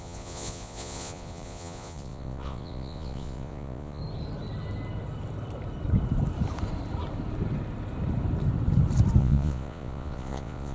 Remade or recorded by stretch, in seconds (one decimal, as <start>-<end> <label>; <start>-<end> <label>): 0.0-4.0 remade; 4.0-9.2 recorded; 9.2-10.7 remade